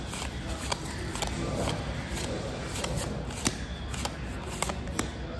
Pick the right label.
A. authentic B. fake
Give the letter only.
A